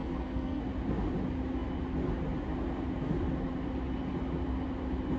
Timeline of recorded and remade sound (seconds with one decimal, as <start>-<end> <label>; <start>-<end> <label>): 0.0-0.6 remade; 0.6-5.2 recorded